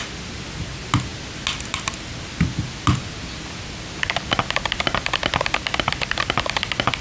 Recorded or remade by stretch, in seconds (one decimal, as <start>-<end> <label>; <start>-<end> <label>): 0.0-7.0 recorded